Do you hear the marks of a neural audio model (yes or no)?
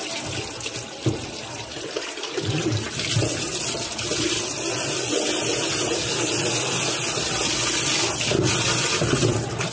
no